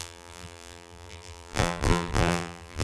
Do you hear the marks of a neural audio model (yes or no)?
yes